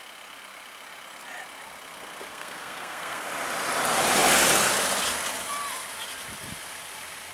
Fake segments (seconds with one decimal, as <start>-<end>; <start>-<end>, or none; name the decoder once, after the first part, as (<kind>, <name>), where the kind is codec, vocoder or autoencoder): 2.3-3.3 (codec, SNAC)